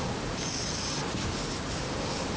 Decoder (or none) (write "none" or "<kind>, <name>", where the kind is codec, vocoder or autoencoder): none